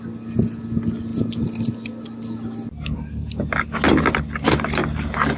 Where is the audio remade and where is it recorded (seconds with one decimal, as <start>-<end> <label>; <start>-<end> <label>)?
0.0-5.4 recorded